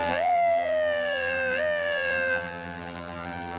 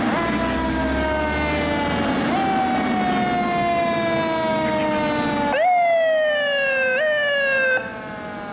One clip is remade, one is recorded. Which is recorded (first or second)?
second